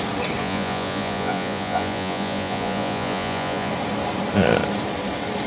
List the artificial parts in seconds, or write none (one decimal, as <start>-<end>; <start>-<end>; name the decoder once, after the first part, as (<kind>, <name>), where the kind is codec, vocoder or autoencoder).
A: 0.4-3.7 (vocoder, Vocos)